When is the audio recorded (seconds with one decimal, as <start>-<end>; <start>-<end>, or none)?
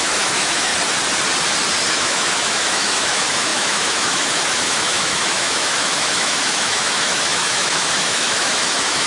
0.7-1.9